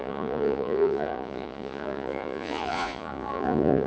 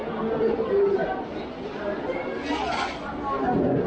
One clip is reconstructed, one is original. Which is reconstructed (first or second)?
first